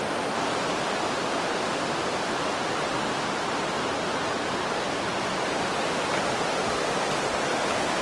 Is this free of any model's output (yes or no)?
yes